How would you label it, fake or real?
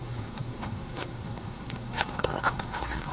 fake